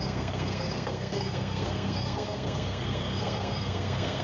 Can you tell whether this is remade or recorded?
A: remade